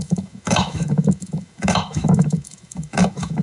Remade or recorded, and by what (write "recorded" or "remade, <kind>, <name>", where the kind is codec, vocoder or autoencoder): remade, autoencoder, DAC-VAE